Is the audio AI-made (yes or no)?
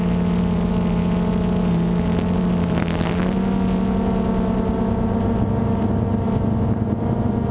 no